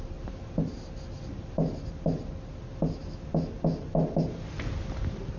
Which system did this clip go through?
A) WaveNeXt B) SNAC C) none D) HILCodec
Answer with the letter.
C